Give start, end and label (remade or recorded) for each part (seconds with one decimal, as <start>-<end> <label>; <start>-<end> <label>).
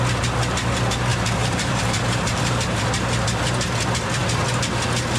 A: 0.0-1.1 recorded; 1.1-2.8 remade; 2.8-5.2 recorded